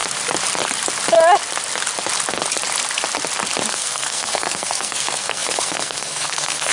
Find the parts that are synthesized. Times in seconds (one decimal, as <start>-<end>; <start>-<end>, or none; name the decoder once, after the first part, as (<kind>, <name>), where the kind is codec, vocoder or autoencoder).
3.7-6.7 (codec, SNAC)